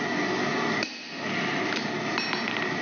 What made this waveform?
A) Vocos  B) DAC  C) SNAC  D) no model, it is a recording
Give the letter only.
D